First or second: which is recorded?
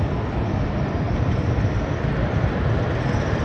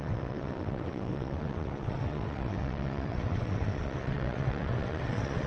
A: first